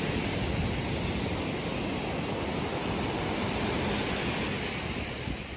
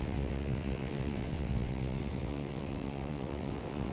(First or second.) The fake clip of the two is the second